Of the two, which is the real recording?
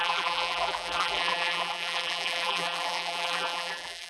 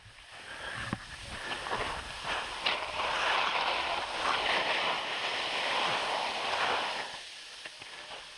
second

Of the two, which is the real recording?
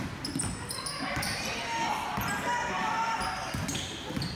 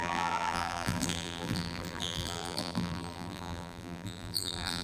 first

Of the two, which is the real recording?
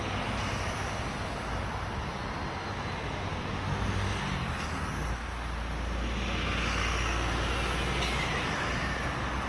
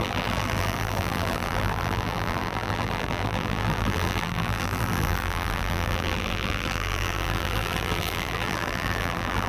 first